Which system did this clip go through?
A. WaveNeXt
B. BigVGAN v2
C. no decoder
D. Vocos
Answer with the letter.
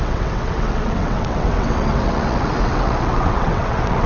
A